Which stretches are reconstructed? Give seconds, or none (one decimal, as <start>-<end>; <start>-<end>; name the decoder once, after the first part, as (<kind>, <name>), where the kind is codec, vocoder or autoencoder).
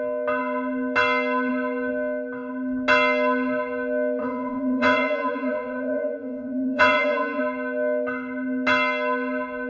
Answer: 4.2-7.4 (vocoder, Vocos)